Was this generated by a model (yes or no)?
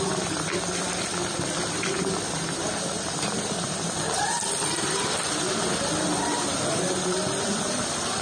no